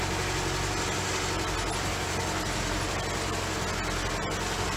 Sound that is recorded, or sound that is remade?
recorded